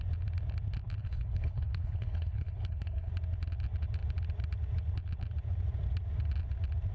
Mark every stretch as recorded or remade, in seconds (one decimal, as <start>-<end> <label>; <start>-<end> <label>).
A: 0.0-1.0 recorded; 1.0-3.1 remade; 3.1-6.9 recorded